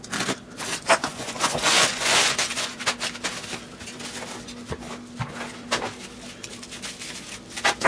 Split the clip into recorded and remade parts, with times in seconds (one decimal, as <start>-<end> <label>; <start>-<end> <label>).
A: 0.0-1.0 recorded; 1.0-2.8 remade; 2.8-7.9 recorded